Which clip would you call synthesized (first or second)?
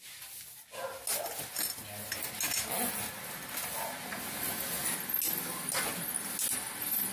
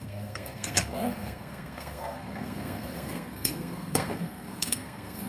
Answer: second